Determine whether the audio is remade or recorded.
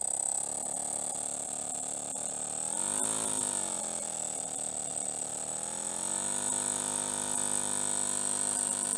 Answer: recorded